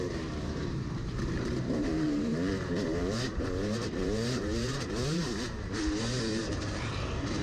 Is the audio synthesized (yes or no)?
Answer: yes